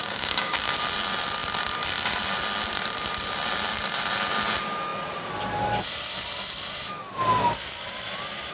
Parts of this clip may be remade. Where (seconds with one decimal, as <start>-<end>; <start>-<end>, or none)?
0.0-0.6